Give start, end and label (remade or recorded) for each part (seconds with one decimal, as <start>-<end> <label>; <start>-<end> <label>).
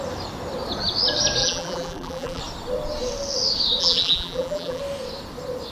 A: 0.0-1.4 recorded; 1.4-2.4 remade; 2.4-3.8 recorded; 3.8-4.8 remade; 4.8-5.7 recorded